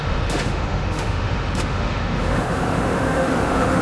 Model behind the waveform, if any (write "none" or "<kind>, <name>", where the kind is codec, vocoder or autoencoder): autoencoder, DAC-VAE